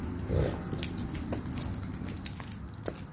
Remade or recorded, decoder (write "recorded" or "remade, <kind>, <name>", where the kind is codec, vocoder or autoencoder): recorded